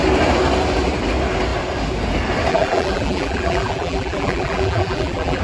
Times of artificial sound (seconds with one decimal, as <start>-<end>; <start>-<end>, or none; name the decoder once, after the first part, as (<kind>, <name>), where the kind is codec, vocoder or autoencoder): 2.5-5.4 (vocoder, BigVGAN v2)